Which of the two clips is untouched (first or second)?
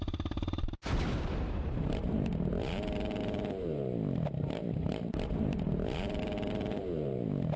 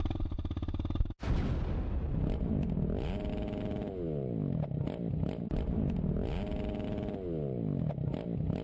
second